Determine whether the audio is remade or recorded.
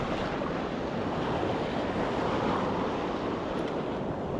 recorded